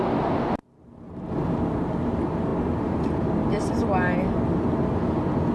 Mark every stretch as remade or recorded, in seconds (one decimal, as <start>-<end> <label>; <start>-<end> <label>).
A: 0.0-0.6 recorded; 0.6-1.3 remade; 1.3-5.5 recorded

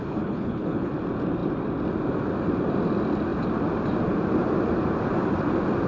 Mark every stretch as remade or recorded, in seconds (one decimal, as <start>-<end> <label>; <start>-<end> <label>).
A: 0.0-0.9 remade; 0.9-5.9 recorded